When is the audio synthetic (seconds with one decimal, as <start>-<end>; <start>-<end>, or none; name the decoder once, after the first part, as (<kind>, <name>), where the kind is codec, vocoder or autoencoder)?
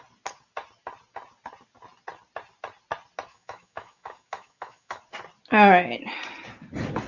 3.3-5.0 (autoencoder, DAC-VAE)